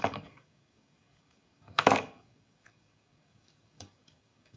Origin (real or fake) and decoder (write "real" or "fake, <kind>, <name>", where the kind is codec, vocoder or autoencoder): fake, codec, DAC